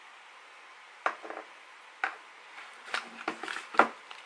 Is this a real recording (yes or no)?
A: yes